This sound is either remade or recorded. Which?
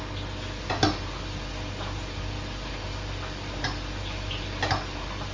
recorded